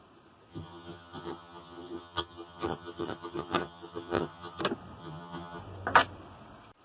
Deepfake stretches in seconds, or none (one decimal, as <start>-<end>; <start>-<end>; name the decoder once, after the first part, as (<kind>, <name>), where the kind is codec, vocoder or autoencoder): 0.5-4.6 (vocoder, HiFi-GAN); 5.0-5.6